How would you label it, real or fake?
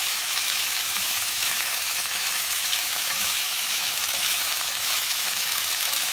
fake